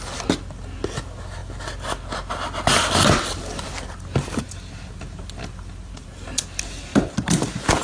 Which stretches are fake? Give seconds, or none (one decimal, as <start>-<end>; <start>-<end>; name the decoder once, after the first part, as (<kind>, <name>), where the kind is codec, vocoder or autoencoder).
none